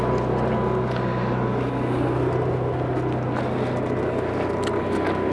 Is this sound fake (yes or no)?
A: no